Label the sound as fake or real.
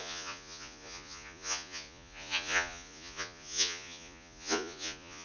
fake